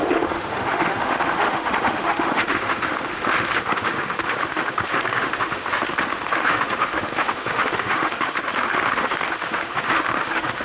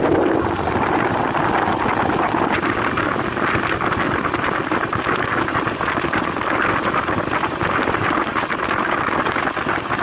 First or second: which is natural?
second